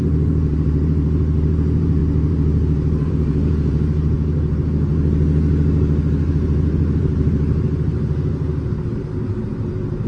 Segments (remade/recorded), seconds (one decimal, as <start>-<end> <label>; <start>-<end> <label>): 0.0-4.9 remade; 4.9-6.3 recorded; 6.3-10.1 remade